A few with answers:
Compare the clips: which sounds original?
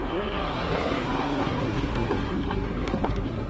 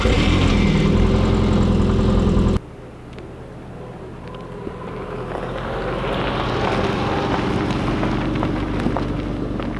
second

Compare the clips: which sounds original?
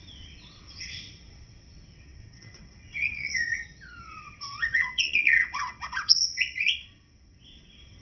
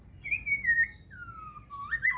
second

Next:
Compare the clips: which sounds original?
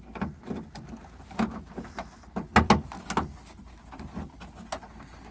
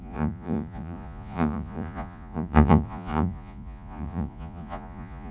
first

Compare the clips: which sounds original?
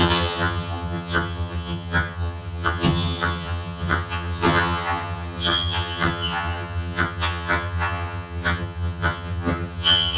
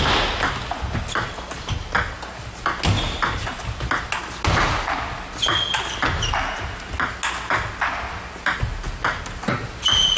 second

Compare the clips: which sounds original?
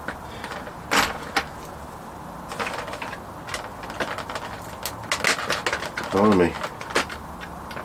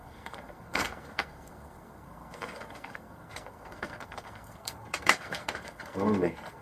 first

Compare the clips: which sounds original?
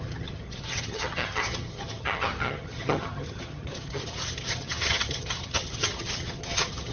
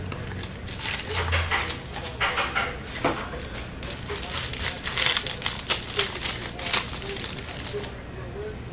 second